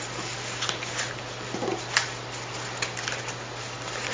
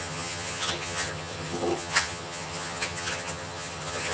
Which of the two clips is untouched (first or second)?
first